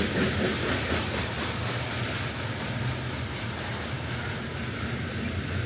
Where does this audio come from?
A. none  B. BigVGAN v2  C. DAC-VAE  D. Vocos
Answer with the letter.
A